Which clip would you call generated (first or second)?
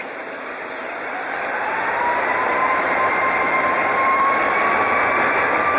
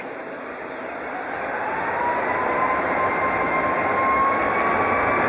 first